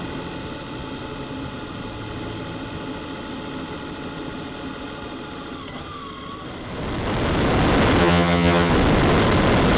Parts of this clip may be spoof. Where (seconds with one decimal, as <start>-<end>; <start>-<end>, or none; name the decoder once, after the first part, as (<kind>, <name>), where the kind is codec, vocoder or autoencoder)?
8.0-8.7 (vocoder, HiFi-GAN)